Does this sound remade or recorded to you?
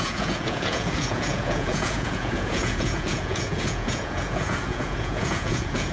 remade